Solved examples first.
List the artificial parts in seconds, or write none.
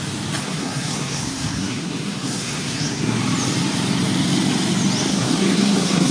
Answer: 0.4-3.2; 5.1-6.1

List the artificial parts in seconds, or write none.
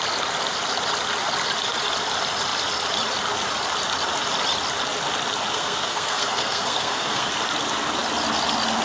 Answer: 5.5-7.3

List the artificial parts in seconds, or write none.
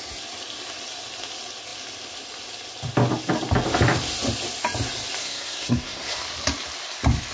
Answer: 5.2-6.2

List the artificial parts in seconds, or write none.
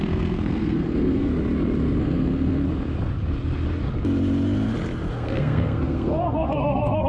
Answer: 0.0-1.3; 2.0-2.6; 5.1-7.1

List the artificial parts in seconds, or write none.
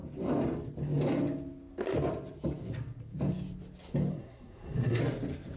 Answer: 4.1-5.0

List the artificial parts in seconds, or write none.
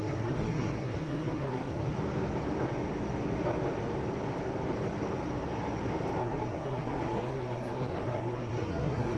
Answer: 0.0-1.8; 6.2-9.2